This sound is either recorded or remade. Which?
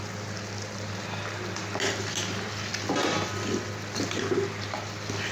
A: recorded